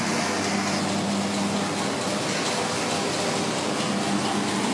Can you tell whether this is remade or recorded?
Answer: recorded